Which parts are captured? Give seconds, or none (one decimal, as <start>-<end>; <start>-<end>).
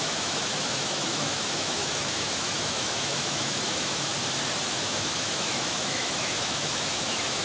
4.1-4.7